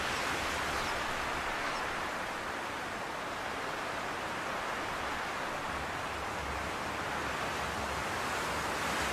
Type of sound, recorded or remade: recorded